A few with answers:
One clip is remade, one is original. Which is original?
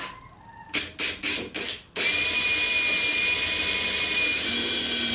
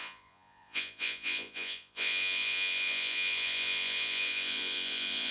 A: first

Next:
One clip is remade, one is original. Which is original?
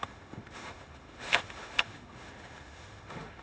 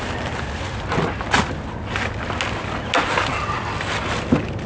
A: second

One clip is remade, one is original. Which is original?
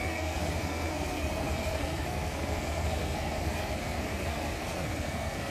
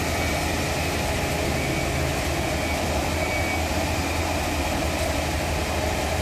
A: second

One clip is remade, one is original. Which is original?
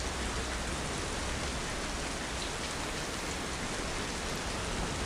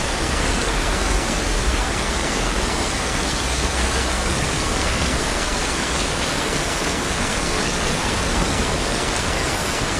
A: first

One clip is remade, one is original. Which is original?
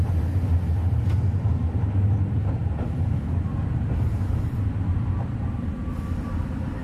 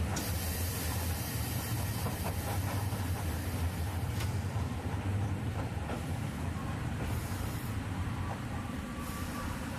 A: first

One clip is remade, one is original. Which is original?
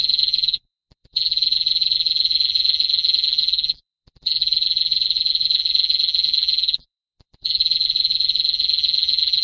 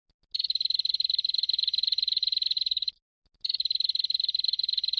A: second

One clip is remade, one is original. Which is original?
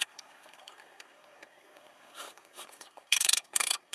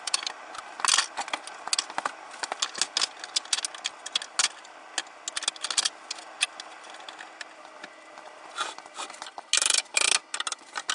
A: second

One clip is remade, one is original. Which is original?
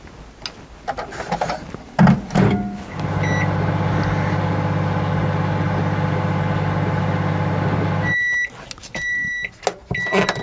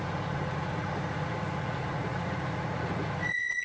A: first